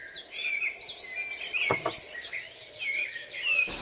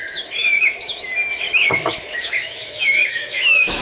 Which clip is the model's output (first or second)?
second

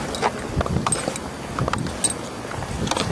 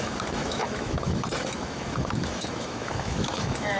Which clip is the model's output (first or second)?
second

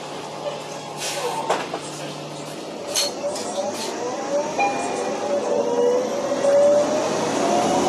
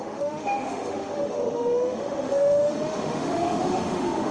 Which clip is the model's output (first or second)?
second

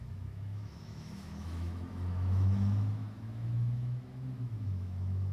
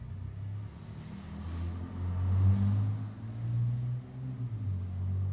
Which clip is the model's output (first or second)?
first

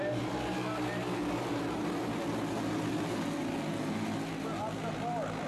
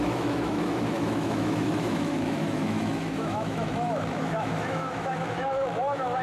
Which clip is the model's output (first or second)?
second